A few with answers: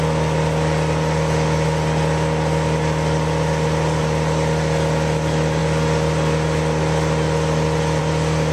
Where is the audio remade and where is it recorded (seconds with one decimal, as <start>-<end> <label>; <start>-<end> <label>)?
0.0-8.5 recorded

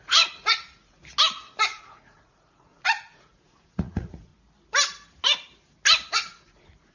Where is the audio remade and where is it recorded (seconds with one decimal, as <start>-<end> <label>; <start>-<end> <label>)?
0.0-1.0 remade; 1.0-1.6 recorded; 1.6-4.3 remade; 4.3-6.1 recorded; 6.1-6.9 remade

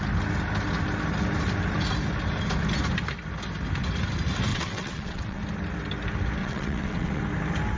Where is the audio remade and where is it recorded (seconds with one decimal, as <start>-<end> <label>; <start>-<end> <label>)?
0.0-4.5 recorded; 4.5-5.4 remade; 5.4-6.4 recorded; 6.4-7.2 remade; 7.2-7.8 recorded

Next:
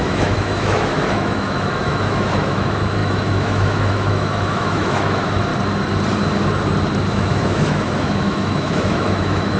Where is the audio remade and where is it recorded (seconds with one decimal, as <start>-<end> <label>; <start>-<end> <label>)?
0.0-5.5 remade; 5.5-7.1 recorded; 7.1-9.6 remade